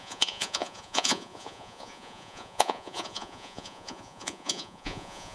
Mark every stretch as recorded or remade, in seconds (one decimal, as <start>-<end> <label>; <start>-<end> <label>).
0.0-5.3 remade